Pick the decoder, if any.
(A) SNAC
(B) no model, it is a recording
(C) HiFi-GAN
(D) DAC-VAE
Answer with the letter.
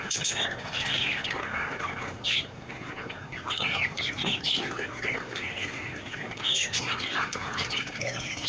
A